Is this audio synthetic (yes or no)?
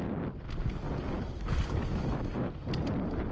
no